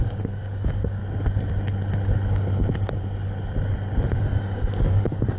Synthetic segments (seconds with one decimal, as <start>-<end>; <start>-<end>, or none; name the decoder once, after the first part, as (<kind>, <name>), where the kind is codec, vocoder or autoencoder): 0.0-1.0 (codec, DAC); 4.2-5.4